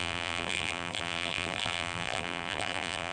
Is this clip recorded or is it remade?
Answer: remade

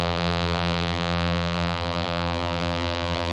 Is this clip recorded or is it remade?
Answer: remade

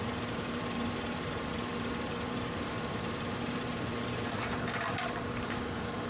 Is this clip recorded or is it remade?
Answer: remade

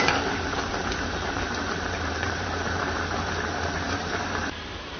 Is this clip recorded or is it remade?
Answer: remade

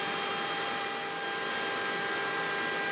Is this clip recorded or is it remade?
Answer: recorded